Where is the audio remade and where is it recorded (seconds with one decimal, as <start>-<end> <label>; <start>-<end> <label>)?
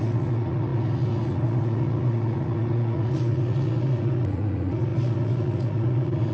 0.0-6.3 remade